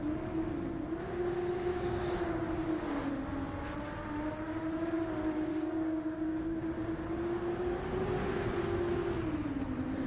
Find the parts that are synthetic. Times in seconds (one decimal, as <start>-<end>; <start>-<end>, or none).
1.7-3.1; 5.5-8.9